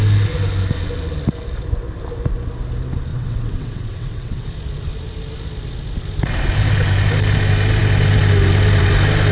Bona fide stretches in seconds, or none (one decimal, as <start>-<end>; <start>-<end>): 0.0-3.1; 4.5-9.3